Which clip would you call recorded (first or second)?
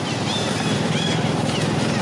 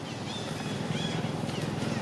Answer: second